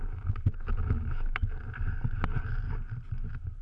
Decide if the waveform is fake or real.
real